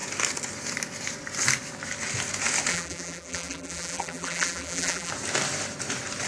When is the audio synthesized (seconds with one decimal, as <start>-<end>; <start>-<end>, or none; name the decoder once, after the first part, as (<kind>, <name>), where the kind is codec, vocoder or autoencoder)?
2.7-5.1 (vocoder, BigVGAN v2)